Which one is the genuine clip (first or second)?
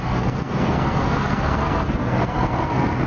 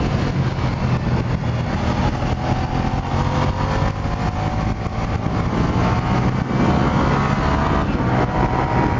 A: second